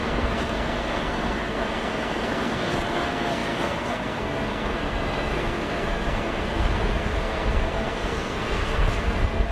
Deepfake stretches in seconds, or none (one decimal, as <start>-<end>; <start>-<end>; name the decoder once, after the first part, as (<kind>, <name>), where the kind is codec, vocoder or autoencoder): 0.0-9.5 (codec, SNAC)